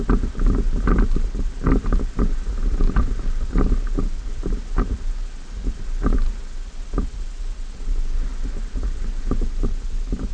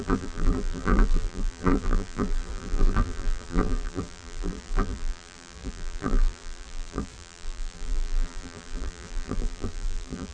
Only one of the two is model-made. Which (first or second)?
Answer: second